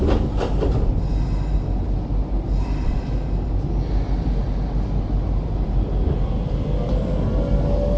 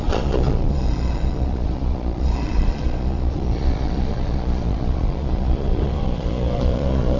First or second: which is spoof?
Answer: second